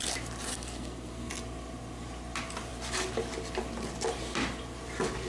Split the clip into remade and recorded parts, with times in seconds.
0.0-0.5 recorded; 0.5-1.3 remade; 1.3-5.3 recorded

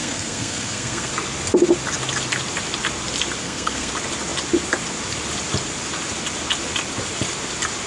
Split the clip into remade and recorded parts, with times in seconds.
0.0-1.1 remade; 1.1-3.4 recorded; 3.4-3.9 remade; 3.9-7.9 recorded

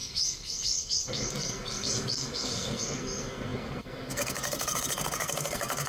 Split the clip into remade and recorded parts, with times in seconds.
0.0-5.9 remade

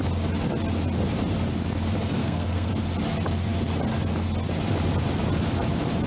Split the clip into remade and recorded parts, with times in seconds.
0.0-2.2 recorded; 2.2-2.7 remade; 2.7-6.1 recorded

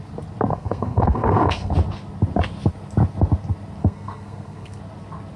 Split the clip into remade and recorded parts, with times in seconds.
0.0-0.5 recorded; 0.5-1.7 remade; 1.7-3.8 recorded; 3.8-4.8 remade; 4.8-5.4 recorded

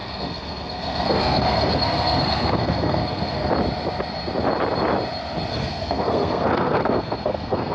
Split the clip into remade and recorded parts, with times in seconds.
0.0-3.5 remade; 3.5-5.5 recorded; 5.5-7.7 remade